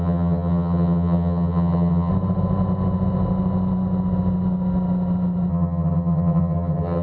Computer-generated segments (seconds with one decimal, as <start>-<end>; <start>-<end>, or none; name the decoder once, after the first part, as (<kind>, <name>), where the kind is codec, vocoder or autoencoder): 0.0-2.1 (vocoder, HiFi-GAN); 5.5-7.0